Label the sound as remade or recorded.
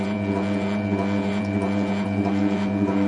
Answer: remade